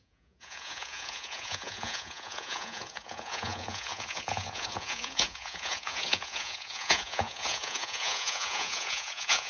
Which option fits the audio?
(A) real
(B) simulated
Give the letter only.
B